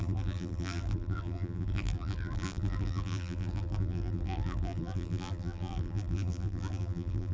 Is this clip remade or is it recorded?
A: remade